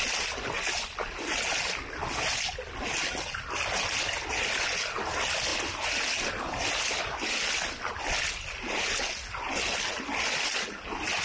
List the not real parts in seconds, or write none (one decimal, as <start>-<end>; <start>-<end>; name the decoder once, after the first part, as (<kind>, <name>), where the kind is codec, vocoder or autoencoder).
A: none